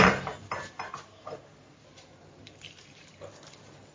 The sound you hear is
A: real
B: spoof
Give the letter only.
A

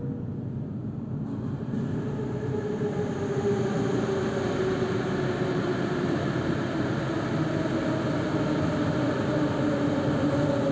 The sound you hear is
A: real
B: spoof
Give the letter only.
A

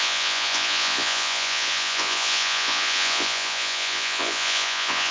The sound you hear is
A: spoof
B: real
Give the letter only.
A